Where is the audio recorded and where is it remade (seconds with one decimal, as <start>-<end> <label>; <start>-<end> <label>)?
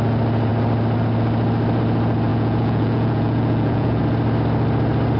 0.0-2.3 recorded; 2.3-4.0 remade; 4.0-5.2 recorded